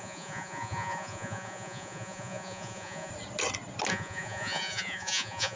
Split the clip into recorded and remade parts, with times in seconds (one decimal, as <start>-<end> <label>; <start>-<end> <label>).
0.0-3.1 remade; 3.1-3.9 recorded; 3.9-5.6 remade